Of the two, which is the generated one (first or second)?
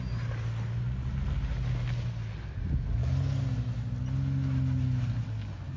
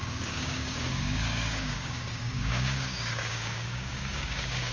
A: second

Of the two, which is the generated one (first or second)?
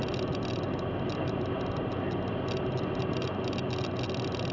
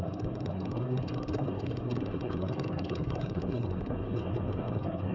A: second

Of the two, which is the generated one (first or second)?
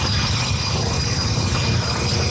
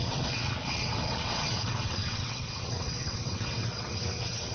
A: second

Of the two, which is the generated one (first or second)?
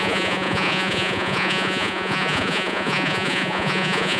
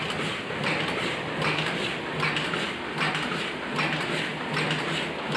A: first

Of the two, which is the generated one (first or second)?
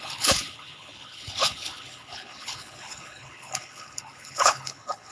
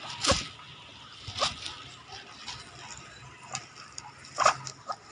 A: first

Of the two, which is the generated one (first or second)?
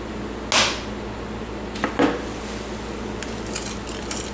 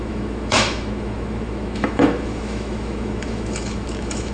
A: second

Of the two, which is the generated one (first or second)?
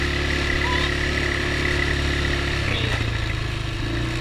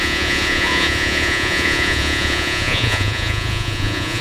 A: second